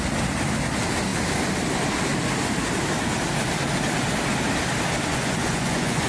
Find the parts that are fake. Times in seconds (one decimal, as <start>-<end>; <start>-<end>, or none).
5.1-6.1